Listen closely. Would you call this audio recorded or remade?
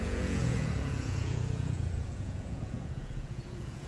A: remade